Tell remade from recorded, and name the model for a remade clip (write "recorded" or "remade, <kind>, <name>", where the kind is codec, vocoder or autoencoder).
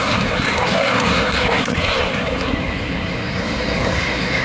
remade, codec, SNAC